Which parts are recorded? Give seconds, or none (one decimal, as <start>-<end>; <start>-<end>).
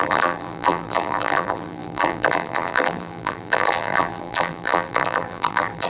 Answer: none